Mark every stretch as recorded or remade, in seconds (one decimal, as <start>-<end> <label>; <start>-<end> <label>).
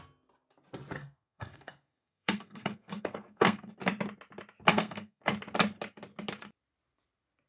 0.0-1.0 recorded; 1.0-3.7 remade; 3.7-4.7 recorded; 4.7-5.2 remade; 5.2-7.5 recorded